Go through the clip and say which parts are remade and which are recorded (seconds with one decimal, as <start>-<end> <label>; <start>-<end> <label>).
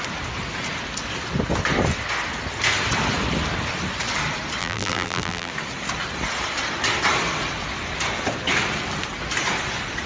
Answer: 0.0-4.6 recorded; 4.6-5.5 remade; 5.5-10.1 recorded